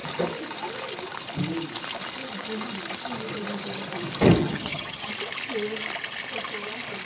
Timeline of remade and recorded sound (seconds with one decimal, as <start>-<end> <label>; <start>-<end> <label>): 0.0-4.4 recorded; 4.4-5.1 remade; 5.1-7.1 recorded